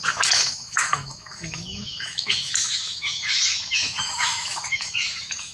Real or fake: fake